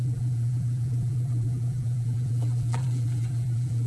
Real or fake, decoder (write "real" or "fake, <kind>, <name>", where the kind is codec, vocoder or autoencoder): fake, vocoder, BigVGAN v2